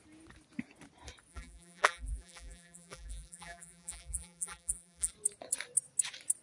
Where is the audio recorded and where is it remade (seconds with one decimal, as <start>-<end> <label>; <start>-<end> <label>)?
0.0-1.3 recorded; 1.3-5.1 remade; 5.1-6.4 recorded